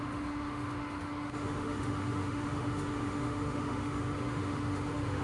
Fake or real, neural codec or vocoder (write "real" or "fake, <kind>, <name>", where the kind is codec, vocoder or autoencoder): fake, autoencoder, DAC-VAE